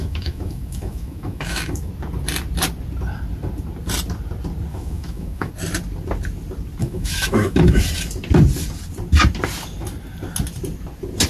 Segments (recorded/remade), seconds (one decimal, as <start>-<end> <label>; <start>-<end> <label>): 0.0-1.9 remade; 1.9-4.7 recorded; 4.7-5.5 remade; 5.5-6.8 recorded; 6.8-7.8 remade; 7.8-11.3 recorded